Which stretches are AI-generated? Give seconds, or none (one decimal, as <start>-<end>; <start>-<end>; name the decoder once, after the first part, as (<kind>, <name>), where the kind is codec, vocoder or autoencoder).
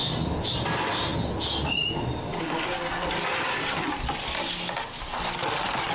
none